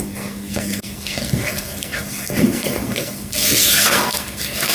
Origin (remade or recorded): remade